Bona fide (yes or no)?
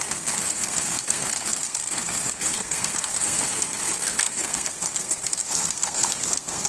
no